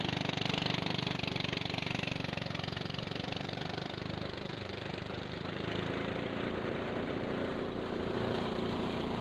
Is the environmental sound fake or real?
fake